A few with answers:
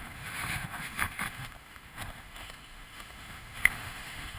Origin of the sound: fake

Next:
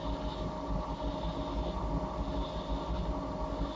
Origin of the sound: real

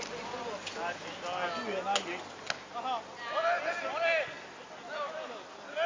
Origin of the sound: real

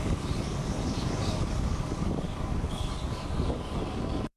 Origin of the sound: fake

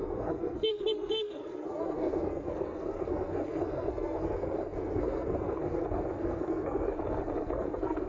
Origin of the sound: fake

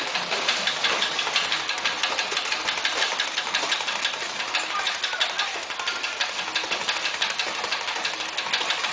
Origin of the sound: real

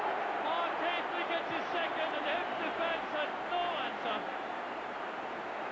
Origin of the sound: real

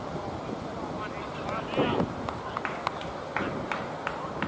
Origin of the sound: real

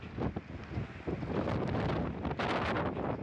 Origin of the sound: real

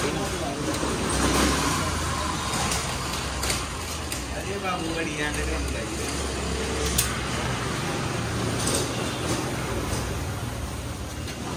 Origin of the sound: real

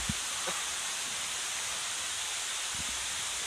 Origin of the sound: fake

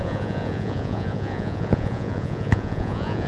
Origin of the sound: fake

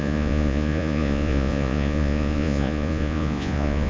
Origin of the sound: fake